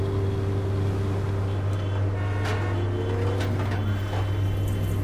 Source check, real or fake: real